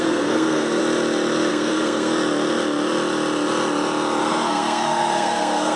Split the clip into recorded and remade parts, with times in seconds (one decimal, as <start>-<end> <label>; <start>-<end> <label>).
0.0-0.8 remade; 0.8-1.5 recorded; 1.5-2.1 remade; 2.1-4.2 recorded; 4.2-5.8 remade